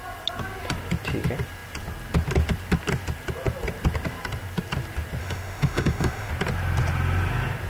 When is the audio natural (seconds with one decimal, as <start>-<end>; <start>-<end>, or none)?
0.0-5.2; 6.3-7.7